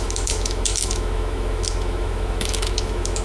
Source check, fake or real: fake